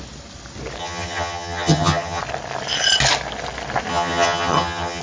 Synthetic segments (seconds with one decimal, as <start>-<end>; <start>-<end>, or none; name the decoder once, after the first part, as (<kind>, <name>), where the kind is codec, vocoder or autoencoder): 0.8-2.2 (vocoder, HiFi-GAN); 3.9-5.0